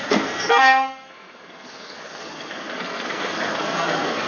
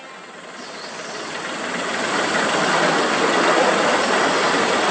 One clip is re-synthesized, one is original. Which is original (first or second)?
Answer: second